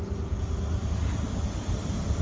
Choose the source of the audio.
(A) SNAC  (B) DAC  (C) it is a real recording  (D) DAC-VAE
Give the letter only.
C